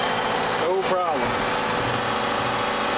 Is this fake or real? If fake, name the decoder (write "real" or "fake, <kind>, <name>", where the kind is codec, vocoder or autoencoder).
real